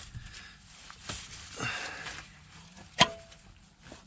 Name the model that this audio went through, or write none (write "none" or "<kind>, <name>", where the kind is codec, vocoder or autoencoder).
none